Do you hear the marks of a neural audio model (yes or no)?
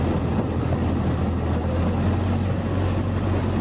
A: no